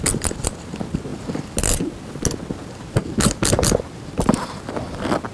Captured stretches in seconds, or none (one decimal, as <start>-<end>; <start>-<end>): 0.0-5.3